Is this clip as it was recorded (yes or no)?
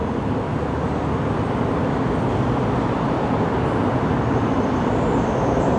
yes